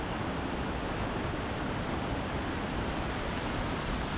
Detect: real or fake real